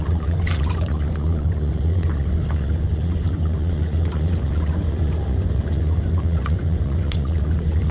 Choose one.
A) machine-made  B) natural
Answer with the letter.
A